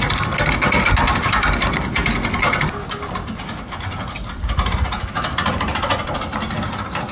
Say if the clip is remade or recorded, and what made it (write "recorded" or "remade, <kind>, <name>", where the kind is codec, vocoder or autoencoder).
recorded